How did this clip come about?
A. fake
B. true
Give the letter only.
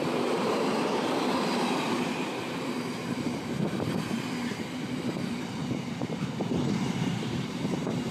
A